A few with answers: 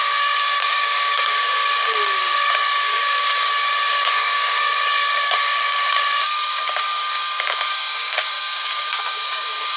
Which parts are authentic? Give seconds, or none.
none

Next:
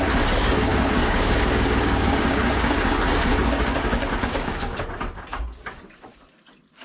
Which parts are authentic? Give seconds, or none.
0.0-0.7; 4.8-6.8